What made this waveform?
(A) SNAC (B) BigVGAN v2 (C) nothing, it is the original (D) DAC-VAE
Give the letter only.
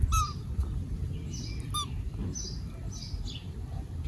C